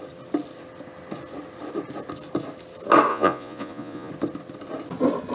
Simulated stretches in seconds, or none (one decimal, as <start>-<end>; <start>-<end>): 3.1-4.1

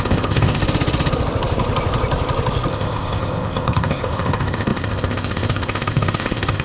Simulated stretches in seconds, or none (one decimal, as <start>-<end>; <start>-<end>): 0.0-0.6; 2.7-6.6

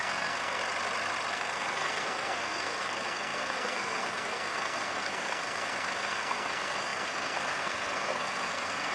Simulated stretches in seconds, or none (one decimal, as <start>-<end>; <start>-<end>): 0.0-0.6; 1.3-8.9